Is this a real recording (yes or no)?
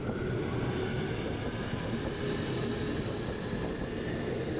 yes